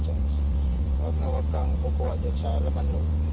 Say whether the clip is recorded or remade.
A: remade